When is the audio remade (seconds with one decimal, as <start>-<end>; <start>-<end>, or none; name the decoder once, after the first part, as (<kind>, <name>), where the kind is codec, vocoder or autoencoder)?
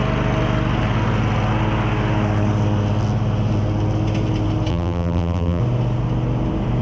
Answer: 4.7-5.6 (vocoder, BigVGAN v2)